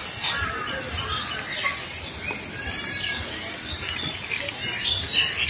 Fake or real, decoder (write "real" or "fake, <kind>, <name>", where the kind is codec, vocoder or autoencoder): fake, vocoder, BigVGAN v2